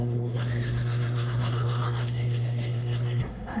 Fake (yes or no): yes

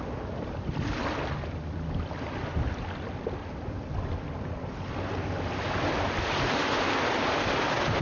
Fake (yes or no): no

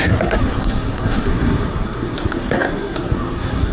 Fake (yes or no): yes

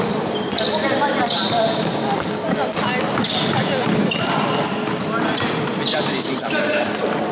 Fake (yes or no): no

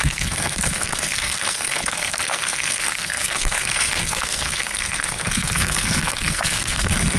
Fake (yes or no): yes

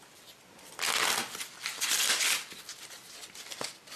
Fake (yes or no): no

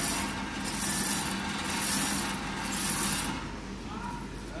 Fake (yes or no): no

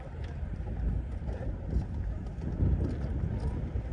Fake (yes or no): no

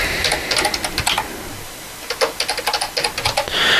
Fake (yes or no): no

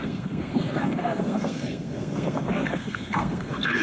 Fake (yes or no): yes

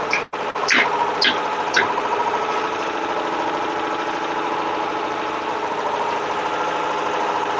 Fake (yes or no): no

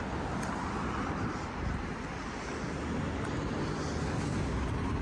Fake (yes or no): no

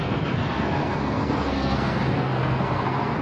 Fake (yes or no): yes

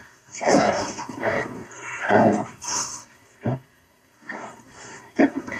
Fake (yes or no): yes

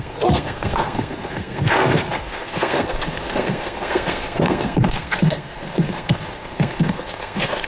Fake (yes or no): yes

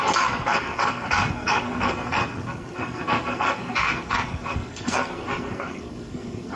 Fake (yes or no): yes